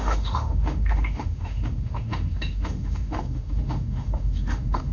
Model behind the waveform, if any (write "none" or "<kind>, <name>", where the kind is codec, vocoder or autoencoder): autoencoder, DAC-VAE